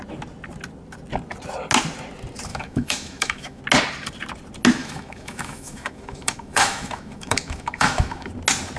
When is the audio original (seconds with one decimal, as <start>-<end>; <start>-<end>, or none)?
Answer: 0.0-2.5; 3.6-4.8; 8.3-8.8